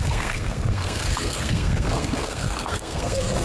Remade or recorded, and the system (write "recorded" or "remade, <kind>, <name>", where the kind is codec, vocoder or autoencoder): remade, codec, SNAC